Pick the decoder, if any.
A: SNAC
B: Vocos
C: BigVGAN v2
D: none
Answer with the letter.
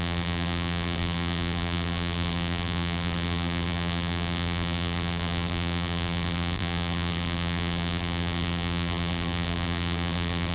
C